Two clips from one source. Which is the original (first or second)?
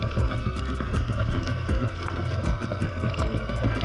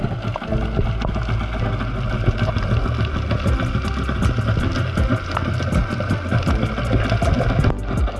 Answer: second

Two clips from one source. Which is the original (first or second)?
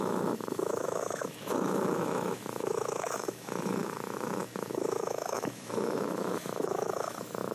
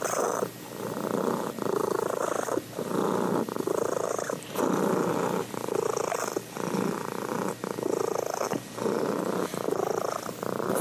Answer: second